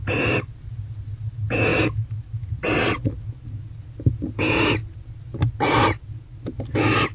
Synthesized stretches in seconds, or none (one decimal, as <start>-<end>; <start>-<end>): none